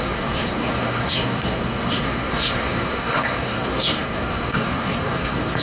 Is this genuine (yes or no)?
no